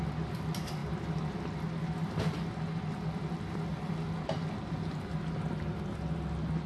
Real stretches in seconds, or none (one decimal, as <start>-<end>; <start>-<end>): 0.0-6.7